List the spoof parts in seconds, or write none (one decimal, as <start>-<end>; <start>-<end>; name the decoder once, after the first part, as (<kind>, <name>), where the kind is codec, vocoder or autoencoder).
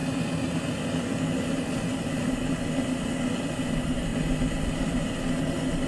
none